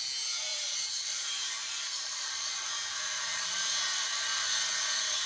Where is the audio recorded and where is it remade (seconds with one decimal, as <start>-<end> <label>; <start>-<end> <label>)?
0.0-0.5 recorded; 0.5-3.7 remade; 3.7-5.3 recorded